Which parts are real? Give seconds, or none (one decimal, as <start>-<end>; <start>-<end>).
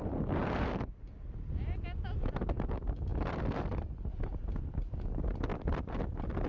0.0-0.4; 1.3-3.1; 3.6-5.5; 6.0-6.5